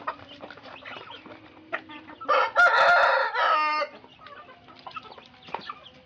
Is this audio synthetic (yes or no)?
no